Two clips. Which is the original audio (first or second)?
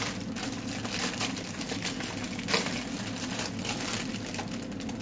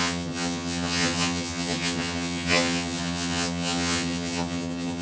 first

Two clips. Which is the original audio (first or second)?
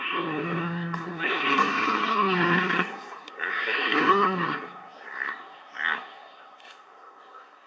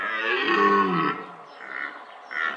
second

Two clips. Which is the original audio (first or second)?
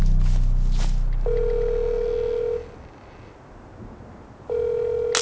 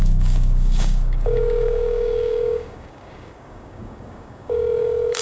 first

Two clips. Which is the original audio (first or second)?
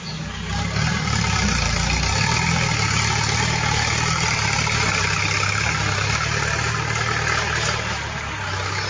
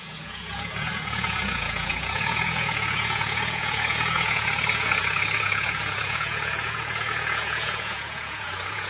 first